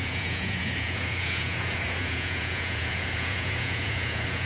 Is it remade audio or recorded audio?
remade